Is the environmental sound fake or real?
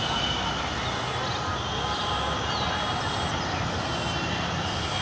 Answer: real